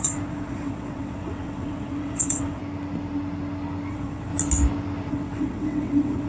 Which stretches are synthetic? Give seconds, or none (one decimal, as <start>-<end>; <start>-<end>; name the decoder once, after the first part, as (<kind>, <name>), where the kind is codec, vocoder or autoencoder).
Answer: 0.0-2.6 (vocoder, WaveNeXt); 3.9-4.3; 5.1-6.3